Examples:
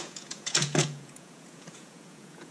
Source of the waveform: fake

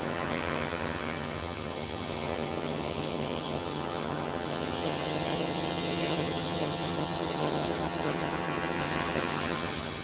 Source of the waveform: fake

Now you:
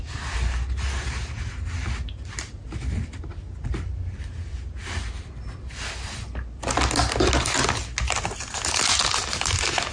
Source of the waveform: real